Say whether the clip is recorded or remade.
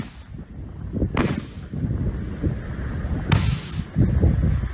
recorded